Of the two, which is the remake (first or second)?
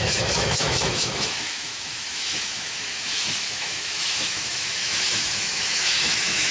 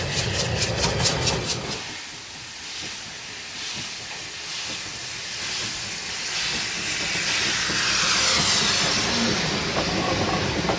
first